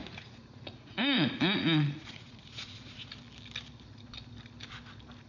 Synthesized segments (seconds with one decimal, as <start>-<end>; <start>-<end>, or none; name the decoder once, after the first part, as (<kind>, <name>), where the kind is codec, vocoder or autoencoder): 0.0-3.1 (vocoder, Vocos)